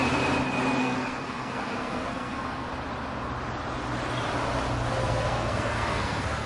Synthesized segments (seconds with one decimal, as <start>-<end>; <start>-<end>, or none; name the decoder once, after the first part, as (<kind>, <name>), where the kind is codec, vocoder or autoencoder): 0.8-2.7 (codec, SNAC); 5.0-6.5